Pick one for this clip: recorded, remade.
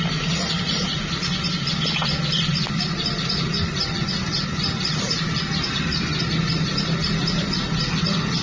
recorded